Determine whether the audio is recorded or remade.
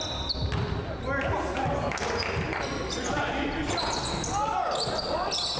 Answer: recorded